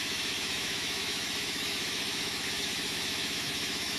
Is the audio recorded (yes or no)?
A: no